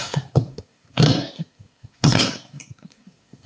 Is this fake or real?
fake